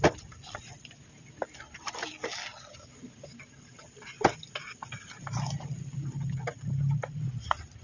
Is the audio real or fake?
real